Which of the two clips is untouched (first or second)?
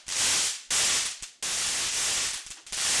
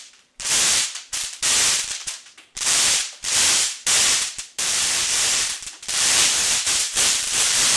first